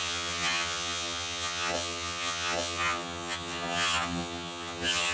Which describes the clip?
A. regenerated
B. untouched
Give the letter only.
A